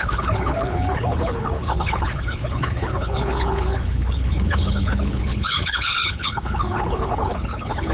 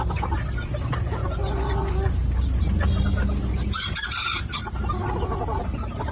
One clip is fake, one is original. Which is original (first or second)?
second